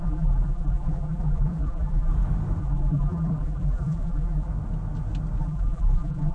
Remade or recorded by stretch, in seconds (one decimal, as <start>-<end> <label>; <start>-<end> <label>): 0.0-2.1 remade; 2.1-2.6 recorded; 2.6-4.5 remade; 4.5-5.4 recorded; 5.4-6.3 remade